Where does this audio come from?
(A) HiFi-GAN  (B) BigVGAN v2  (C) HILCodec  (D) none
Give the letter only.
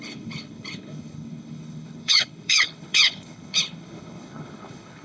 C